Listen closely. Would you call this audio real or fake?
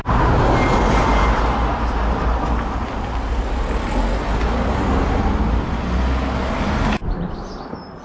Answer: real